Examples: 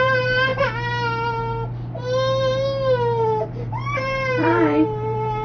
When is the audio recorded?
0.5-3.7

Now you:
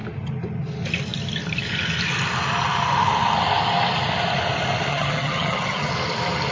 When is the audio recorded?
0.0-4.9; 5.9-6.5

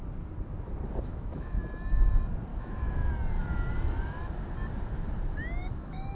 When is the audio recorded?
0.0-1.1; 1.6-2.5; 3.1-5.6

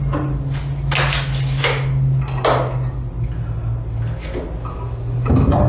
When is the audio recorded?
0.0-5.7

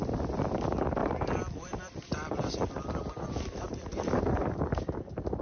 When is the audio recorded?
0.0-1.0; 4.2-5.4

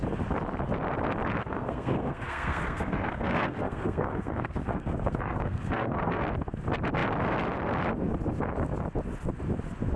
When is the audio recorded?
0.0-1.4; 6.2-10.0

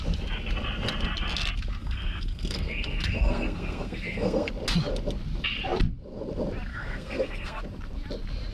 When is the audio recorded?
0.0-1.8; 4.5-6.7; 7.6-8.5

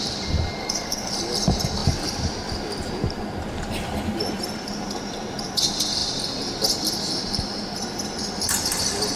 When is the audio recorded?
0.0-0.6; 1.1-9.2